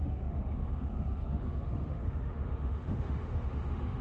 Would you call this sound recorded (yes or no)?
no